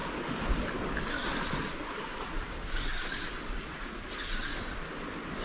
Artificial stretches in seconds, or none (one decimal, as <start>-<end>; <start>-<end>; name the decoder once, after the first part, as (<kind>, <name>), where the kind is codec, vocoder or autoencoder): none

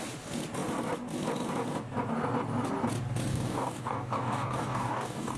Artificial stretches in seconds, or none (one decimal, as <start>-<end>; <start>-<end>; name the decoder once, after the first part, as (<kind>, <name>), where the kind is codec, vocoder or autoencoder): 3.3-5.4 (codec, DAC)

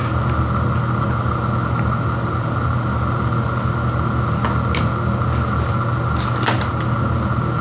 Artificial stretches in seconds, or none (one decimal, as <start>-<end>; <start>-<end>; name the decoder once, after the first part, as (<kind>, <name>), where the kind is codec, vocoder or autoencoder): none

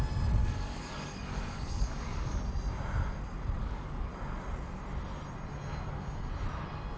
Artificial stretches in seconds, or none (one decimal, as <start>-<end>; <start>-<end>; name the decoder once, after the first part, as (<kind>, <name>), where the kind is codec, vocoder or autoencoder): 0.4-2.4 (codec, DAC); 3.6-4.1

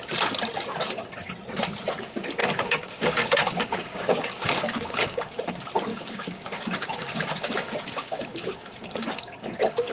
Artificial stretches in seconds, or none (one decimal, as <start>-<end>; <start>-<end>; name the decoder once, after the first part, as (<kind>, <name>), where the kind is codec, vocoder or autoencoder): 2.4-5.5 (codec, DAC); 5.9-9.9